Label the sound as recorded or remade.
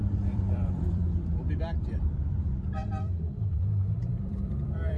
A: remade